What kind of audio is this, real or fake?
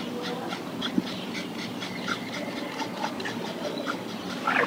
real